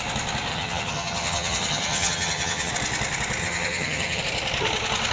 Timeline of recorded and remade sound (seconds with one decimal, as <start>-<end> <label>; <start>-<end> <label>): 0.0-0.5 recorded; 0.5-2.7 remade; 2.7-3.4 recorded; 3.4-4.2 remade; 4.2-5.1 recorded